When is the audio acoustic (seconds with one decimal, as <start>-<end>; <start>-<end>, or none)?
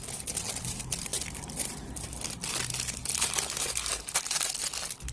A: 0.0-3.0; 3.9-5.1